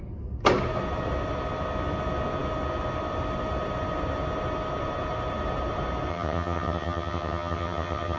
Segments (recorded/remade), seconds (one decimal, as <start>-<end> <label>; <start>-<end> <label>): 0.0-6.1 recorded; 6.1-8.2 remade